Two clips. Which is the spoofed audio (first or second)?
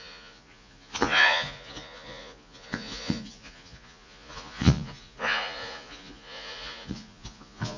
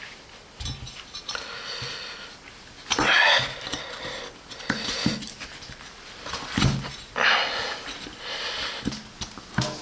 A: first